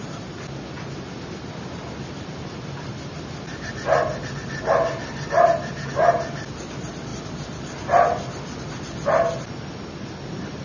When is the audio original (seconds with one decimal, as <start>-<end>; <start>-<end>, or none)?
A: 0.0-10.6